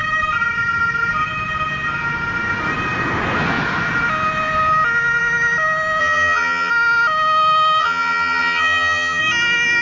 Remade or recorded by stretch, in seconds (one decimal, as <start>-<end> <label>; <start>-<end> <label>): 0.0-6.0 recorded; 6.0-6.7 remade; 6.7-7.8 recorded; 7.8-9.2 remade; 9.2-9.8 recorded